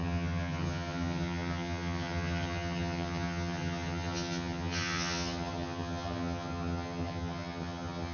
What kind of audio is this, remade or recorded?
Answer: remade